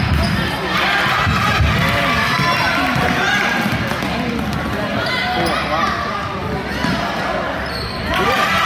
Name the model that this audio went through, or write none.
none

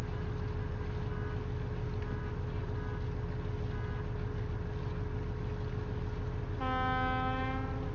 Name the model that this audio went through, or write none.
none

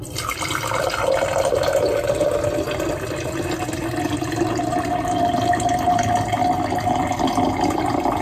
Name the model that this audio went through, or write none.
none